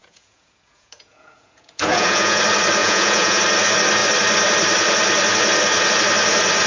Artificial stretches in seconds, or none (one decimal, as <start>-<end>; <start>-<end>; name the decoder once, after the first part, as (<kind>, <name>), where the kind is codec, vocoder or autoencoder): 0.0-2.4 (vocoder, Vocos); 2.8-3.4